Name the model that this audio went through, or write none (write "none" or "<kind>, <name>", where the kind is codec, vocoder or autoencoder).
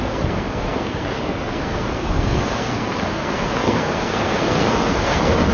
codec, SNAC